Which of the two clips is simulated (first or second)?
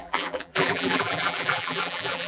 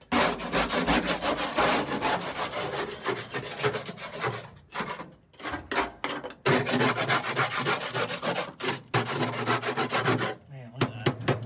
first